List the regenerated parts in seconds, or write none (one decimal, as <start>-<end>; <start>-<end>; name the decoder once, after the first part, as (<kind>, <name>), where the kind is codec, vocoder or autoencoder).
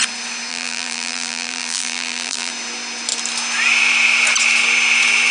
0.5-2.5 (vocoder, BigVGAN v2)